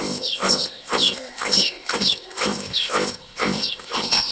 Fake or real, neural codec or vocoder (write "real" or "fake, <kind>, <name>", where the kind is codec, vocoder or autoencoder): fake, codec, ZipCodec